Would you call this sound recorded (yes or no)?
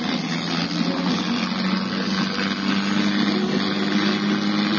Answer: yes